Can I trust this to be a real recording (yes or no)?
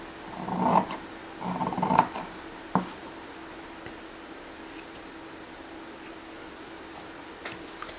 yes